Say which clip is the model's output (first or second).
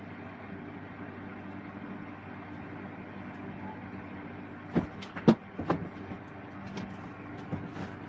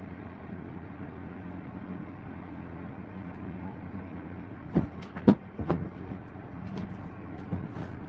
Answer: second